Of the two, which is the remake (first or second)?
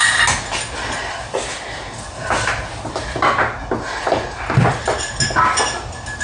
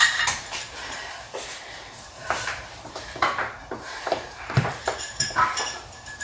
second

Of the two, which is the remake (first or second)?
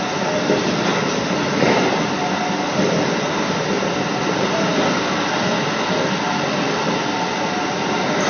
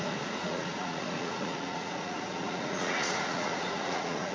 second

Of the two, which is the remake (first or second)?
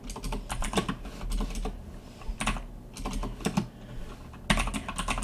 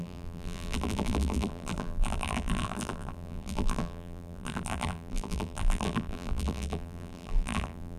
second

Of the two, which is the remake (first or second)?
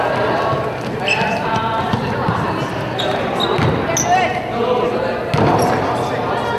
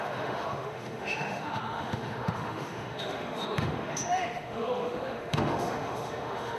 second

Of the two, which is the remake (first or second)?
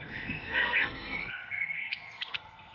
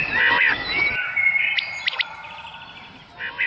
first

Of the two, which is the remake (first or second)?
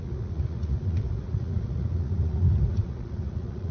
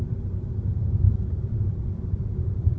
first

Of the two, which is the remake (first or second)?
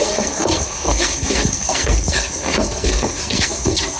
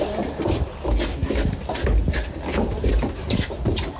first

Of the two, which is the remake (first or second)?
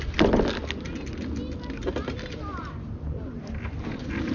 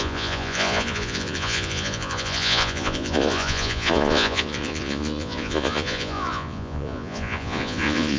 second